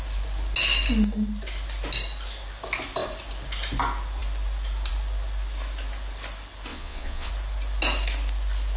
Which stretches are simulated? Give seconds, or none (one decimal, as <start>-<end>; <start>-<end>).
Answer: 6.7-7.3